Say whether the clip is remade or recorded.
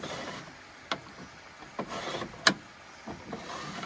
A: recorded